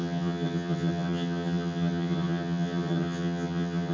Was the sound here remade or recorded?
remade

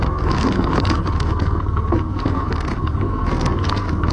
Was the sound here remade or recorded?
remade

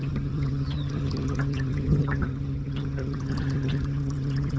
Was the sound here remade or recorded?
remade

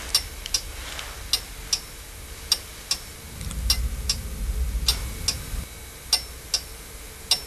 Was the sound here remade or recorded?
recorded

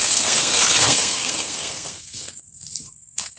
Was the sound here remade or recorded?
remade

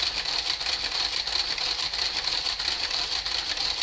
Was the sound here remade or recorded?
remade